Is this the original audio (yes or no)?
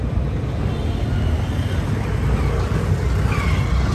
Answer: yes